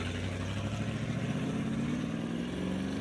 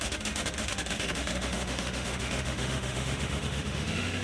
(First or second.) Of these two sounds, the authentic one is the first